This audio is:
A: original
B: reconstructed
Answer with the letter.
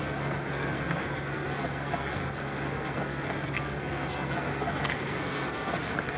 B